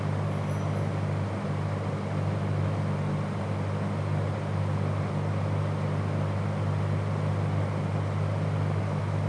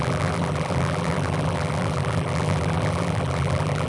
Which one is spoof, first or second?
second